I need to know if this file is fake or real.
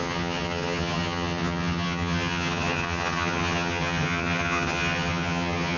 fake